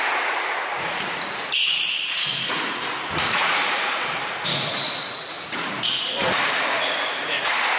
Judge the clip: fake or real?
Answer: fake